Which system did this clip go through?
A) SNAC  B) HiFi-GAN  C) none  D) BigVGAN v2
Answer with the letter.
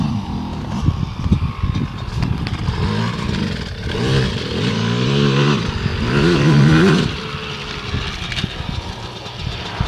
C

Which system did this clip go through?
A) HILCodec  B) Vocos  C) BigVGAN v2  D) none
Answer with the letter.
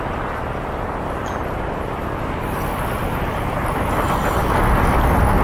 D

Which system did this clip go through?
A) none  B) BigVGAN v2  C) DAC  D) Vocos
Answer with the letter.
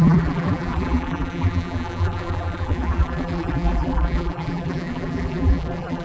B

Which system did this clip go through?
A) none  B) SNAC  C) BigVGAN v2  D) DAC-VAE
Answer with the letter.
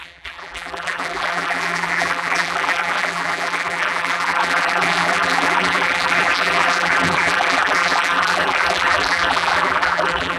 C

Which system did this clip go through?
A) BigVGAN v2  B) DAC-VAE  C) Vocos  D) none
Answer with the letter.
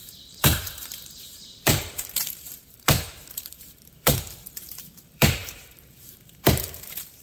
A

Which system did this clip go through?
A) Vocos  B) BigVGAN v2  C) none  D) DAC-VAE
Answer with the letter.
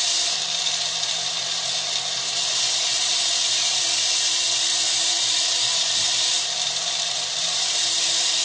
B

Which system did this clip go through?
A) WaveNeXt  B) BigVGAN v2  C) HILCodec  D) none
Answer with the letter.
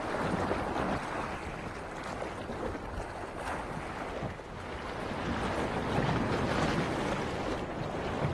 D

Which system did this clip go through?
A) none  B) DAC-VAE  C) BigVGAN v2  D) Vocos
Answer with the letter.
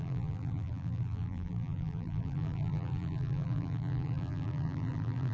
C